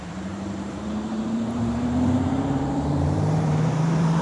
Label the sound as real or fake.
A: fake